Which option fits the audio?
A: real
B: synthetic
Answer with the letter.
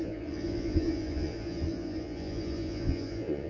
B